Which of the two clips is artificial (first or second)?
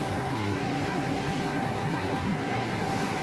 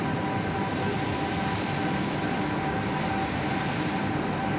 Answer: first